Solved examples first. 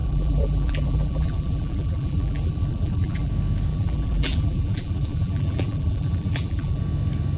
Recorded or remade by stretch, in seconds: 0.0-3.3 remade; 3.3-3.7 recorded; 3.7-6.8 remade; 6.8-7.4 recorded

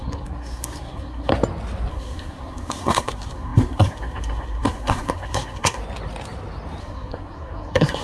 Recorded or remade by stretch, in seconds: 0.0-1.3 remade; 1.3-1.9 recorded; 1.9-5.8 remade; 5.8-6.8 recorded; 6.8-8.0 remade

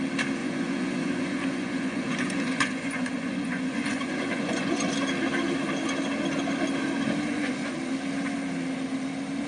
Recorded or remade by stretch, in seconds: 0.0-0.4 recorded; 0.4-4.9 remade; 4.9-7.3 recorded; 7.3-7.8 remade; 7.8-9.5 recorded